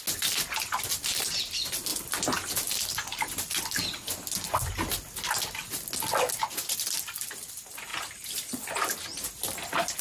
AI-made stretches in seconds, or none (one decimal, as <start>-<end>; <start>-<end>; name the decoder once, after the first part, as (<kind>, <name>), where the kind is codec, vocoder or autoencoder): none